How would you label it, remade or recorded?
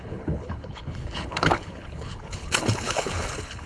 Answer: remade